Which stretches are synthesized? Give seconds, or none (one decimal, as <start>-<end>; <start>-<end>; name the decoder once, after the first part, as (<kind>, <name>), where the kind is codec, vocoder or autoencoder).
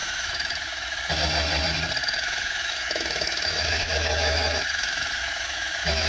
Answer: 0.0-1.0 (autoencoder, DAC-VAE); 2.0-6.1